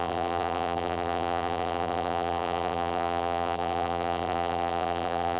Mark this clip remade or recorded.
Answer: remade